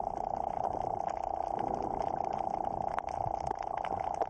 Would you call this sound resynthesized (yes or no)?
no